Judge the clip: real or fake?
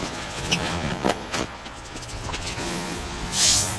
fake